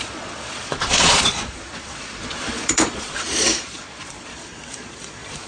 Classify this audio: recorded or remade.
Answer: remade